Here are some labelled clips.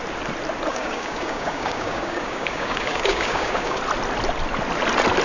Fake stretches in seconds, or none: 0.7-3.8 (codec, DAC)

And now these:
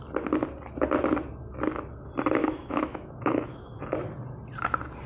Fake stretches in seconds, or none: 2.4-3.8 (autoencoder, DAC-VAE)

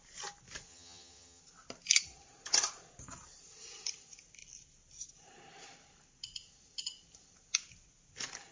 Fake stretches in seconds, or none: 0.7-1.4 (vocoder, HiFi-GAN)

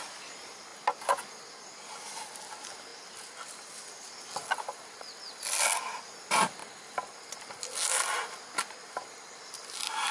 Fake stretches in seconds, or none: none